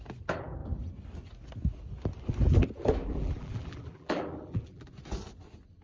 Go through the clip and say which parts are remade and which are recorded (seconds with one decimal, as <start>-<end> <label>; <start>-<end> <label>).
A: 0.0-3.0 recorded; 3.0-4.9 remade; 4.9-5.8 recorded